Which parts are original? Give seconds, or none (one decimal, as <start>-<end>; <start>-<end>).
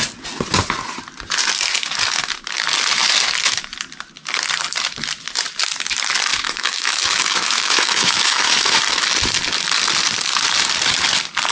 0.0-6.3; 8.8-11.5